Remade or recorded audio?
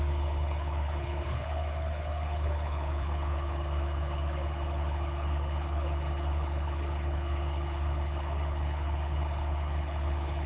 remade